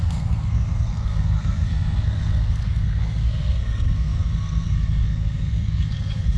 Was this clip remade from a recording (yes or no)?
yes